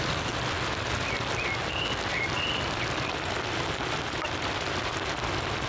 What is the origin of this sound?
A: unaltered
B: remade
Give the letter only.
A